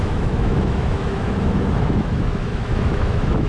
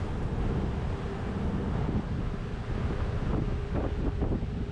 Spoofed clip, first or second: first